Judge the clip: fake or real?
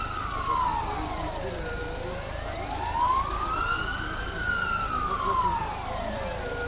real